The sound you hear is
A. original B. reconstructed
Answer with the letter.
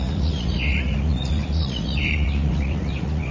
B